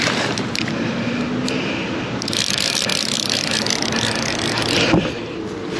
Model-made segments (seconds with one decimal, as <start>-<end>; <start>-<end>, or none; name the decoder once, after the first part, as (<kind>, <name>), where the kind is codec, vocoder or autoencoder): none